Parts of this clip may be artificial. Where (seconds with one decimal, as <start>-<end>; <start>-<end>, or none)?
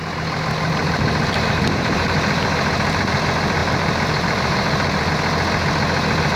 0.8-3.0; 3.6-5.1